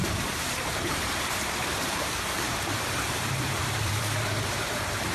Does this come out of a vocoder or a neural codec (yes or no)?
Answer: yes